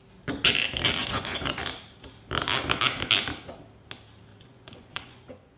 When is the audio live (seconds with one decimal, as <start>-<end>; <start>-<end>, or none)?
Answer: 0.0-1.0; 1.6-4.3